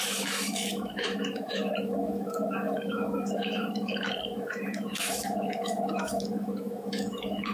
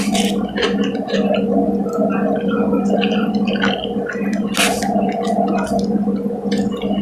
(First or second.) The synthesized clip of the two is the first